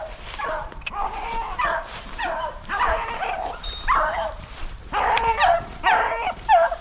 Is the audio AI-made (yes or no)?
yes